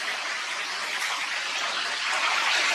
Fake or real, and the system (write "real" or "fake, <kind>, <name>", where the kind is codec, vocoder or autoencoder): real